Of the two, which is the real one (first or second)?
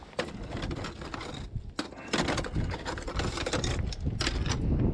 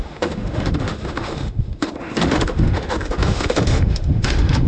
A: first